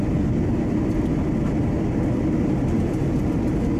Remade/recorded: recorded